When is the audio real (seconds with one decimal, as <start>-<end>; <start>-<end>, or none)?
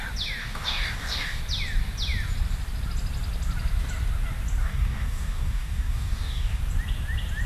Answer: 0.0-0.4; 1.4-4.6; 6.6-7.5